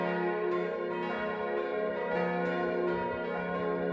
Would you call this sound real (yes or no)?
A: yes